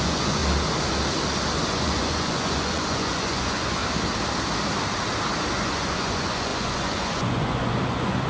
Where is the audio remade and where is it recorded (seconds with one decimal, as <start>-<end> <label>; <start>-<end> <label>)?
0.0-0.4 remade; 0.4-1.7 recorded; 1.7-3.8 remade; 3.8-5.5 recorded; 5.5-8.3 remade